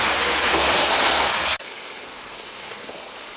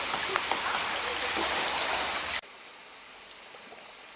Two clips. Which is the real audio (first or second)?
second